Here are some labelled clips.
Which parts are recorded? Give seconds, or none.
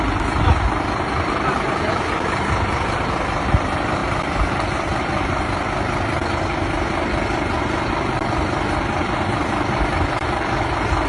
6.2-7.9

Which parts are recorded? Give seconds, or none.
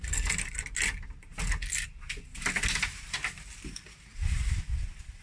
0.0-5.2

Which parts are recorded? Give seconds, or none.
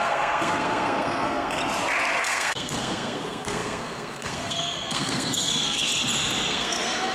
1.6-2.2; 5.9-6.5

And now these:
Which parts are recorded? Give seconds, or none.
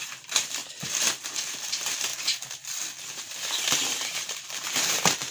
0.6-1.7; 2.1-3.0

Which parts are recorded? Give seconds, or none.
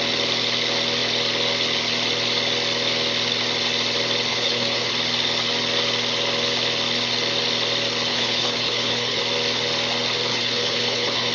0.0-4.3; 4.9-8.1; 9.2-10.3